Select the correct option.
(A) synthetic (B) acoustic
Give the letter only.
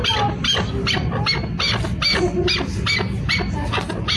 B